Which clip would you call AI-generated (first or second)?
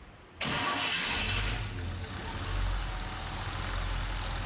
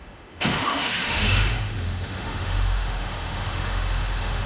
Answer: second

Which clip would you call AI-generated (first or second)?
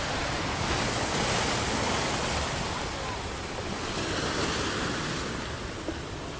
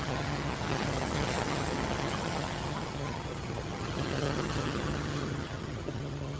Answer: second